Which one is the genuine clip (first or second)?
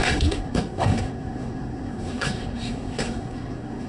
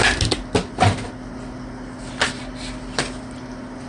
second